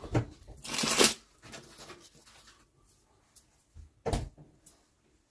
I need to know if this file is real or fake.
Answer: real